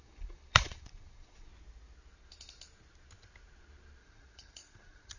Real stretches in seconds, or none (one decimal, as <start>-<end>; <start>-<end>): 1.5-4.0